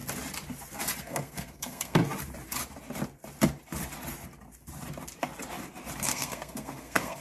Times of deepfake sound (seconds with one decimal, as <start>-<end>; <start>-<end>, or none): 1.0-2.0; 6.0-7.2